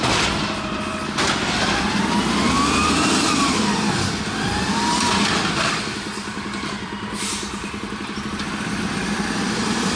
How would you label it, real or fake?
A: fake